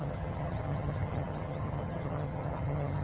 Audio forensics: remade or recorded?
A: remade